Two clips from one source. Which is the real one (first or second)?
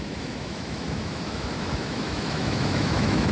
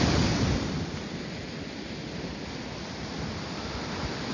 second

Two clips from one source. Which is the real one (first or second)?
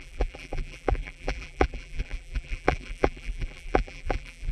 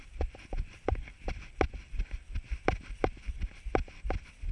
second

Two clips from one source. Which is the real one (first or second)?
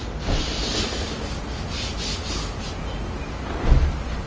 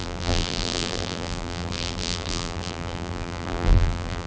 first